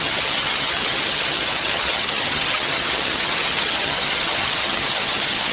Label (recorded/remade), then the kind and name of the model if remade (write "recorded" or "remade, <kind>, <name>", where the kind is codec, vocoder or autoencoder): remade, vocoder, HiFi-GAN